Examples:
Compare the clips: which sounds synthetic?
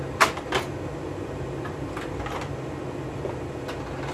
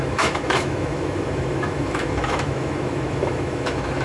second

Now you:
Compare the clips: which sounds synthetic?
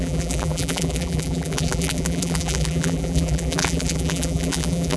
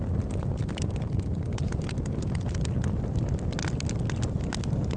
first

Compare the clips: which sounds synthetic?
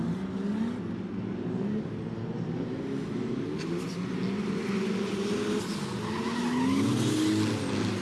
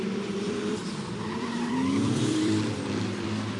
second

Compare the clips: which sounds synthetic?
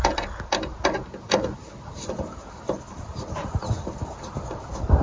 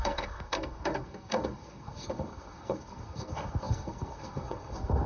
second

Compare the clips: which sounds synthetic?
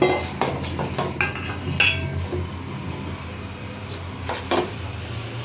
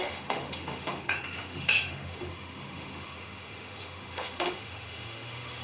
second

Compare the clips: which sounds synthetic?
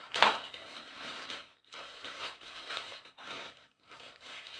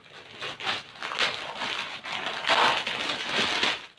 first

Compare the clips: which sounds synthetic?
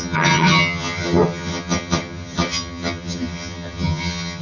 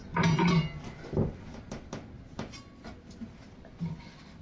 first